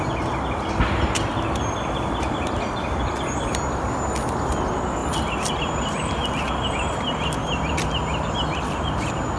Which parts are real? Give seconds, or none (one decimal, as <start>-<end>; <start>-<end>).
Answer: 0.0-9.4